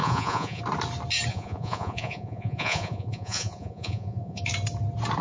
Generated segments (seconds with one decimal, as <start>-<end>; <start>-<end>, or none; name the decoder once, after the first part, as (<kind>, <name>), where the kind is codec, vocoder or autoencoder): 0.0-0.6 (vocoder, Vocos); 1.3-4.4